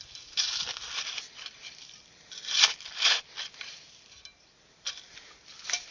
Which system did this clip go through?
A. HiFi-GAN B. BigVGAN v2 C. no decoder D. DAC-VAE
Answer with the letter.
C